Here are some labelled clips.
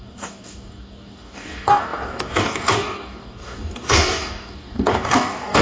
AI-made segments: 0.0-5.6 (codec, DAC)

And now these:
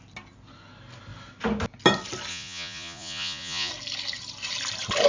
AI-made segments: 2.3-3.7 (vocoder, Vocos)

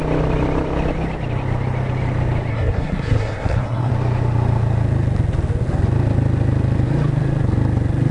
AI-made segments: 2.5-3.9 (codec, SNAC)

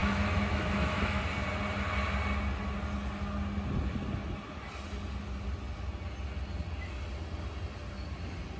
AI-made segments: 0.0-1.2 (autoencoder, DAC-VAE)

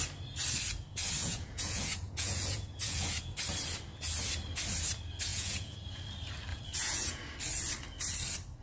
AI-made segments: 1.2-3.2 (vocoder, Vocos); 5.3-6.0; 6.5-7.2

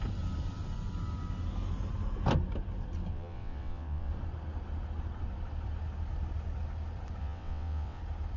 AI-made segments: 3.1-4.1 (vocoder, WaveNeXt); 7.2-8.0

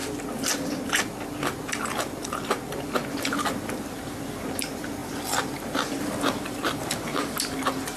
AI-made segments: 5.0-6.0 (vocoder, BigVGAN v2)

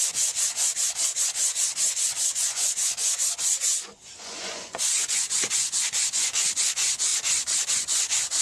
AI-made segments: 0.0-0.7 (vocoder, Vocos); 1.2-7.1; 7.7-8.4